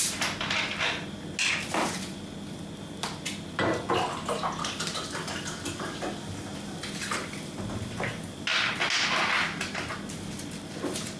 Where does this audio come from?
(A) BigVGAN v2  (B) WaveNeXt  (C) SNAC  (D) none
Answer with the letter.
D